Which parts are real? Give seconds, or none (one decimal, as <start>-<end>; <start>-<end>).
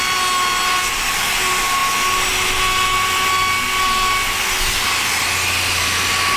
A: 0.0-6.4